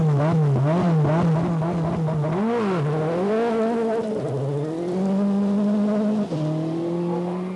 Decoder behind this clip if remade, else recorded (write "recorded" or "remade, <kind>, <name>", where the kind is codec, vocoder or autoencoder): recorded